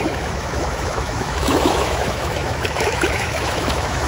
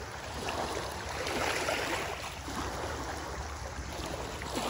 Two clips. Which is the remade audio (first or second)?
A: first